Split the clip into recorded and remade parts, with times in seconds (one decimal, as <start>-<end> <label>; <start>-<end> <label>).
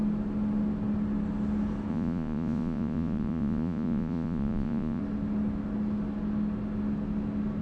0.0-1.9 recorded; 1.9-5.0 remade; 5.0-7.6 recorded